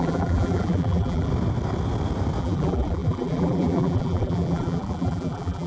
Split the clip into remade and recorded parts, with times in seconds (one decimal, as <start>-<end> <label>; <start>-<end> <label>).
0.0-1.3 remade; 1.3-2.4 recorded; 2.4-5.7 remade